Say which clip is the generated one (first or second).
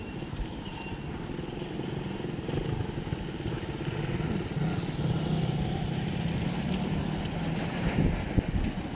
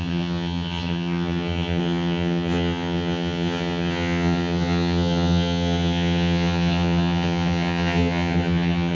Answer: second